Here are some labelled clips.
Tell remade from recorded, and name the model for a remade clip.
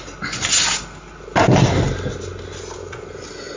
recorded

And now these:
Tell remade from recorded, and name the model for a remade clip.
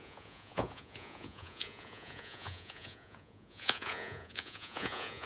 remade, vocoder, Vocos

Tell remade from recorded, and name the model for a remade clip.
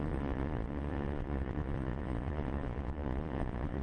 remade, vocoder, Vocos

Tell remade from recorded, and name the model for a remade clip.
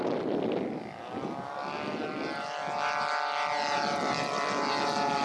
recorded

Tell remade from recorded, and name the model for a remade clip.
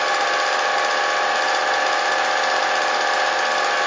recorded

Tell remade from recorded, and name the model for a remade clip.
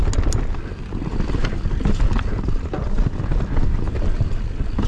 recorded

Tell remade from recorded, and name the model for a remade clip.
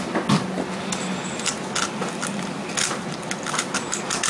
recorded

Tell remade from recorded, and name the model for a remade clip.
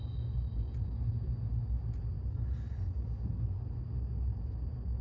recorded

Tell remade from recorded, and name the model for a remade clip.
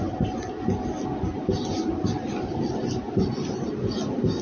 recorded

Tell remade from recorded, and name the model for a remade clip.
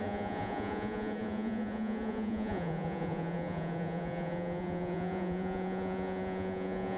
remade, vocoder, Vocos